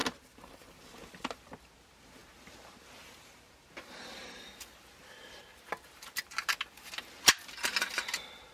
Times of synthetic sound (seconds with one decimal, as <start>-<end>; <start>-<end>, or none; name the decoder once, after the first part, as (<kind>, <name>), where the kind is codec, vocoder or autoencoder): 0.0-0.7 (vocoder, BigVGAN v2)